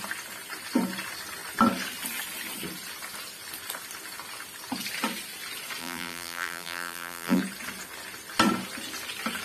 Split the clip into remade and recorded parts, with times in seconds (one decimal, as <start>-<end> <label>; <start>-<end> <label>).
0.0-5.8 recorded; 5.8-7.4 remade; 7.4-9.4 recorded